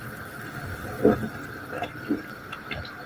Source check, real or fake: real